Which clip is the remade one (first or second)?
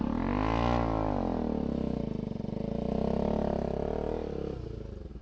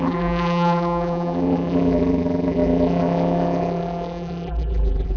second